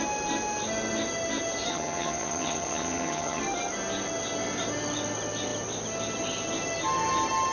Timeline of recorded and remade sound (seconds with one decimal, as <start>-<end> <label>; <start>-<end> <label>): 0.0-1.7 recorded; 1.7-3.4 remade; 3.4-7.5 recorded